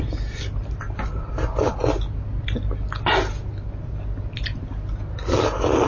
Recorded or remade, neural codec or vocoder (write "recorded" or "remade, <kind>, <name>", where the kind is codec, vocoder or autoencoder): recorded